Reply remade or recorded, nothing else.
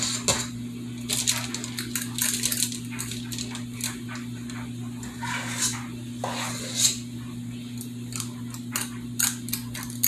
recorded